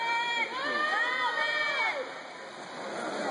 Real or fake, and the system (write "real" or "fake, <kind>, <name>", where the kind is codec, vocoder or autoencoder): real